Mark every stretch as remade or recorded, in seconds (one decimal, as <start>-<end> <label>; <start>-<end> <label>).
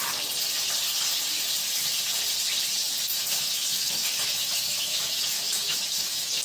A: 0.0-3.1 recorded; 3.1-6.4 remade